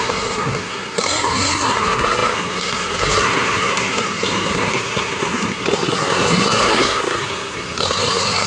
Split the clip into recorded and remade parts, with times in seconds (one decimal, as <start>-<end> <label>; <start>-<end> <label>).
0.0-8.5 remade